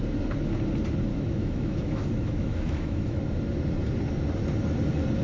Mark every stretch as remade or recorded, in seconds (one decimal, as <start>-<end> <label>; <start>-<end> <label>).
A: 0.0-1.1 recorded; 1.1-3.2 remade; 3.2-5.2 recorded